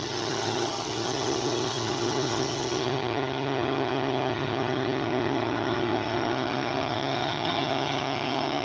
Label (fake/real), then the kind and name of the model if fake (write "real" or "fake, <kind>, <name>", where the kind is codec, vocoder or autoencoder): fake, vocoder, HiFi-GAN